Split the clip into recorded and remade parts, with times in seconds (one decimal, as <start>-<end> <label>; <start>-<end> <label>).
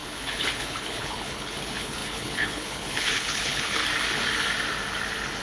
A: 0.0-3.8 remade; 3.8-5.4 recorded